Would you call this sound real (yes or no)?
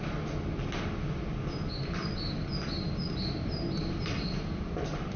yes